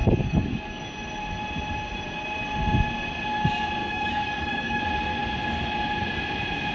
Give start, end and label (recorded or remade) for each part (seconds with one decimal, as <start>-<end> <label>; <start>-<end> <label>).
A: 0.0-0.8 remade; 0.8-3.8 recorded; 3.8-4.8 remade; 4.8-6.7 recorded